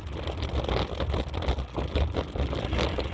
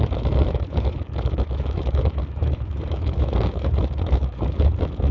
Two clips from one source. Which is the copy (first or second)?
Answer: second